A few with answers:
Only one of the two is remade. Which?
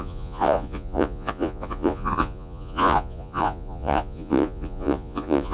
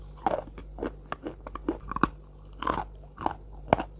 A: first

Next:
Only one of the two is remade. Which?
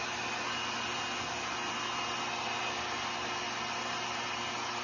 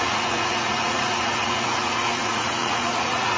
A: second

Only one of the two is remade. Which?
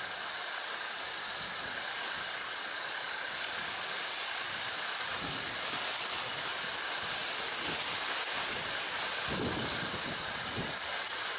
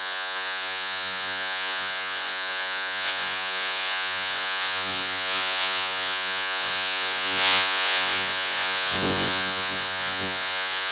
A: second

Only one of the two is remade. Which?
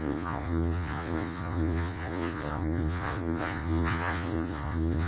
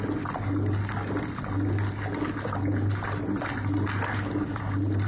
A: first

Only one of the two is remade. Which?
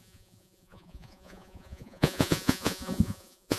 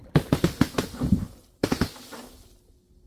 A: first